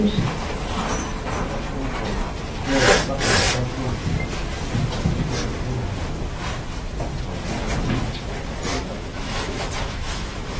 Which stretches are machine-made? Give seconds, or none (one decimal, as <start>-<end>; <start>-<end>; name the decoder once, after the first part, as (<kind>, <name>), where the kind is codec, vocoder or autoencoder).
8.7-10.6 (autoencoder, DAC-VAE)